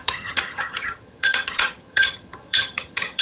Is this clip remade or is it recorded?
remade